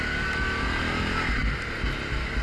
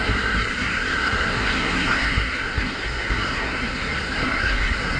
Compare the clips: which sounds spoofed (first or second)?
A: second